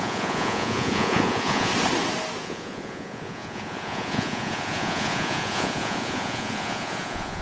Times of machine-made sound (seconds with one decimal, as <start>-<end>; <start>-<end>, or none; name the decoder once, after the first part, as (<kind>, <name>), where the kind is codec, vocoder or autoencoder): 0.0-1.7 (vocoder, Vocos); 2.4-7.4